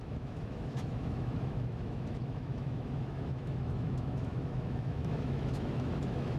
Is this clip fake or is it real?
fake